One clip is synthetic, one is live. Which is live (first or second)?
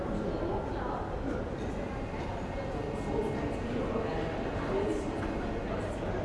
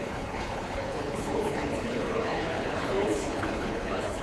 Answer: first